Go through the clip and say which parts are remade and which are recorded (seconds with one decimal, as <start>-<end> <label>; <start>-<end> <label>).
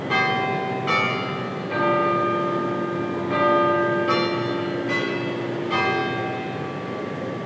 0.0-7.5 recorded